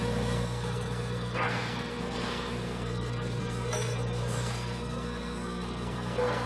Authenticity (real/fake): fake